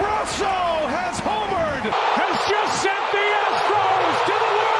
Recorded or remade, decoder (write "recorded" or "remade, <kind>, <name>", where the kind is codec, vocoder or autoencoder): remade, vocoder, BigVGAN v2